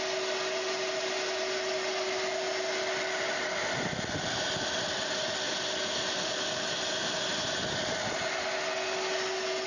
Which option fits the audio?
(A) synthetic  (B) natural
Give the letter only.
B